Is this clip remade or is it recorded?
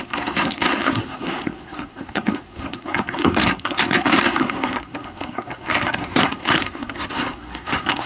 remade